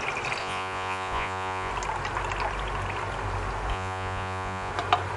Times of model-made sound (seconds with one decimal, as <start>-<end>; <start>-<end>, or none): 0.4-1.7; 3.7-4.7